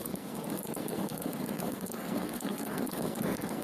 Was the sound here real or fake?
fake